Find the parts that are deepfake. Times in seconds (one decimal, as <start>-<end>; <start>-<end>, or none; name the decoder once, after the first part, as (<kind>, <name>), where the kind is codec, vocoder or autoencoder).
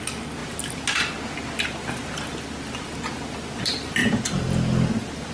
none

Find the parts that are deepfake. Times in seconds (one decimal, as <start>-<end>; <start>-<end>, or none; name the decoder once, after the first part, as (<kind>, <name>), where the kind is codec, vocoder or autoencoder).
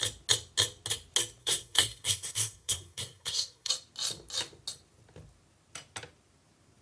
1.4-3.7 (codec, SNAC)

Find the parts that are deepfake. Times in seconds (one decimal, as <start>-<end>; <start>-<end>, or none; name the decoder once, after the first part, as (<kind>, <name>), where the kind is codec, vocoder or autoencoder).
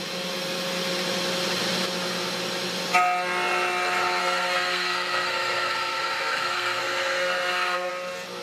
4.2-7.9 (codec, SNAC)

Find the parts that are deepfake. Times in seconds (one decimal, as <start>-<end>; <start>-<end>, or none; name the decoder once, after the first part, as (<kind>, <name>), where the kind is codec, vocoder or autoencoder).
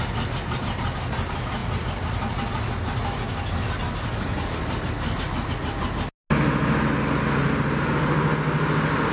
none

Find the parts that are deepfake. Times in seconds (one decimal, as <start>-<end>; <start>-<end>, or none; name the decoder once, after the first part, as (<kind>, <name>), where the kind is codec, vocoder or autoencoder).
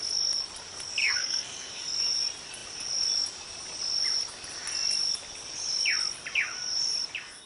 1.0-1.7 (codec, SNAC)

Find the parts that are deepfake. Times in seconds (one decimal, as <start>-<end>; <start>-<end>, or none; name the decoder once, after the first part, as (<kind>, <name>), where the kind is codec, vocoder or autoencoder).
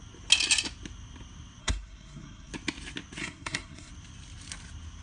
1.6-2.5 (codec, SNAC); 3.2-3.9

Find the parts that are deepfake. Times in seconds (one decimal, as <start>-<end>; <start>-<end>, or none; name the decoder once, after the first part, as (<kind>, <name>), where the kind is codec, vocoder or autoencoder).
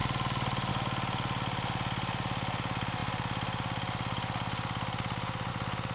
none